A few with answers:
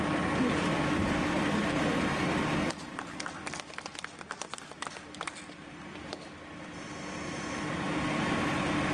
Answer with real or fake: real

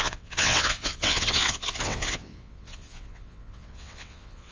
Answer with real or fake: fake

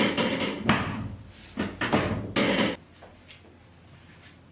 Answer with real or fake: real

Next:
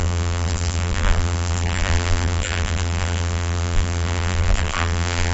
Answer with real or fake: fake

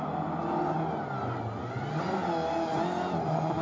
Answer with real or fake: real